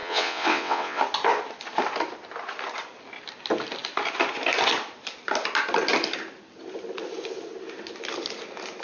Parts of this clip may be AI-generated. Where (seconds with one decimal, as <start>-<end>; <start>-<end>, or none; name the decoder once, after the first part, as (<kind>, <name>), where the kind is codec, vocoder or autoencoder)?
0.0-1.0 (vocoder, WaveNeXt)